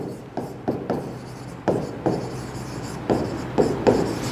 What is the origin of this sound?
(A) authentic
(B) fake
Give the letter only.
B